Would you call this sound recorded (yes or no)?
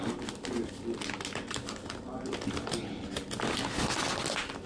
yes